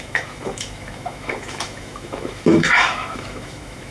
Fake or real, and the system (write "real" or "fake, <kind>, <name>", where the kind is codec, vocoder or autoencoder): fake, autoencoder, DAC-VAE